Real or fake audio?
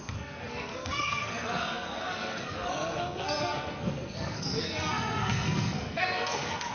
fake